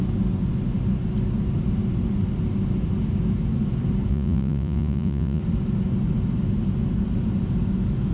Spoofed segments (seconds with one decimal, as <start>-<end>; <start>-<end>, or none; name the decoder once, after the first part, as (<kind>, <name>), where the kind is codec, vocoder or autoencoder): 4.1-5.4 (vocoder, Vocos)